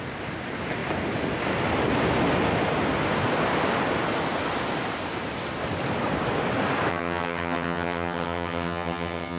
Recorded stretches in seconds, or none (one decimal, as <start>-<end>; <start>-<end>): 0.0-6.9